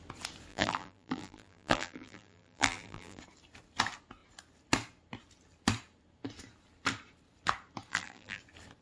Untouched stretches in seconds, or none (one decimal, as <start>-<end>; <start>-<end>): 0.0-0.5; 3.2-7.9; 8.4-8.8